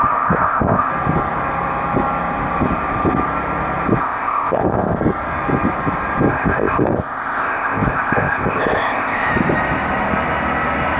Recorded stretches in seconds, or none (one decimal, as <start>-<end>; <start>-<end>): 0.9-4.0; 5.0-6.3; 9.3-11.0